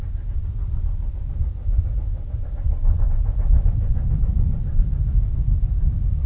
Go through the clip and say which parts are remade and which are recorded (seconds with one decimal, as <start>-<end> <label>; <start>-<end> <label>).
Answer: 0.0-2.1 recorded; 2.1-3.1 remade; 3.1-6.3 recorded